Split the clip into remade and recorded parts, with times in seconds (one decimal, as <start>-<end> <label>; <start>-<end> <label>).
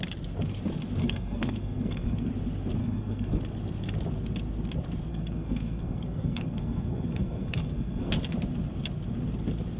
0.0-1.0 recorded; 1.0-2.3 remade; 2.3-2.8 recorded; 2.8-3.4 remade; 3.4-5.1 recorded; 5.1-8.1 remade; 8.1-9.8 recorded